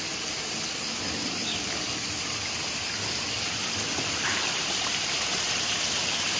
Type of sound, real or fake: real